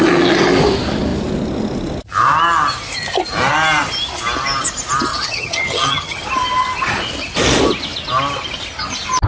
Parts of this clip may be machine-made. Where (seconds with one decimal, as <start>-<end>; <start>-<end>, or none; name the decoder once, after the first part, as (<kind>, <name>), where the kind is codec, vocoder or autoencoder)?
5.1-6.2 (vocoder, HiFi-GAN)